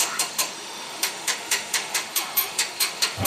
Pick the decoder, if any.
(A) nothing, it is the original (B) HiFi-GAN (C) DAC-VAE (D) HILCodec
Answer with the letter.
C